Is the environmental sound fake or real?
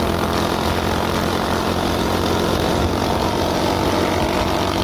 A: real